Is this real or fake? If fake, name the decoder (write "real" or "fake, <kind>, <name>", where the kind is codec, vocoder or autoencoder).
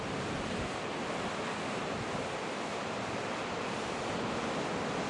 fake, vocoder, BigVGAN v2